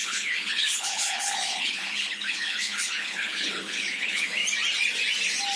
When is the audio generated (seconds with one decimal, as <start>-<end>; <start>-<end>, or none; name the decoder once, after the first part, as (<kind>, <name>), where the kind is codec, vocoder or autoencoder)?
0.0-4.4 (codec, HILCodec)

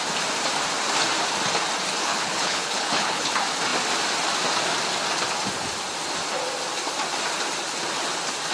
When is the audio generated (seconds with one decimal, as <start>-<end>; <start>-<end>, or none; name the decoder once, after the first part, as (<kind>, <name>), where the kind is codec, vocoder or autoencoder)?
2.0-3.3 (codec, HILCodec)

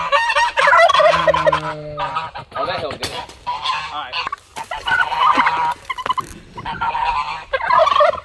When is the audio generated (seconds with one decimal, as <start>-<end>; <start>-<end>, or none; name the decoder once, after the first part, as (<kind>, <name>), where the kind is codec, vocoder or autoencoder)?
none

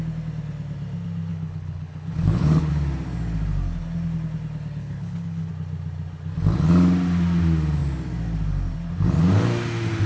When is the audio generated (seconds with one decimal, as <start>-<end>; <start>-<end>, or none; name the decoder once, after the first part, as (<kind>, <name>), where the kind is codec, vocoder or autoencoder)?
1.3-2.7 (codec, HILCodec); 4.8-5.5